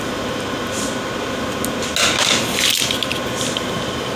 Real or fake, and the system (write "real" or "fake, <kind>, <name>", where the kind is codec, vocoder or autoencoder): real